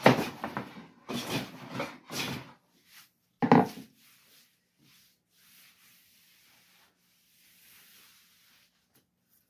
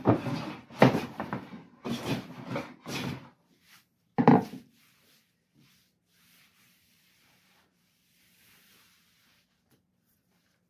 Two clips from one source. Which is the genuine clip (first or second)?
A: first